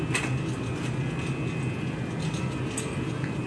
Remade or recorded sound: recorded